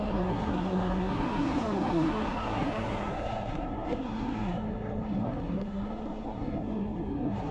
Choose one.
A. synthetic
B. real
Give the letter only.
A